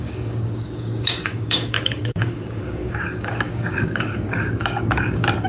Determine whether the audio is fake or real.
fake